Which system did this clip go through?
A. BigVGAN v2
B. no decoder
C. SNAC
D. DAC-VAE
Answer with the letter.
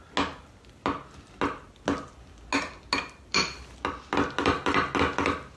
B